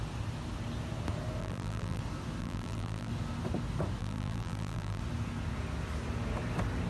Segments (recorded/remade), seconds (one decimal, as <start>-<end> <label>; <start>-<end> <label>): 0.0-1.4 recorded; 1.4-2.0 remade; 2.0-2.4 recorded; 2.4-3.1 remade; 3.1-4.0 recorded; 4.0-5.0 remade; 5.0-6.9 recorded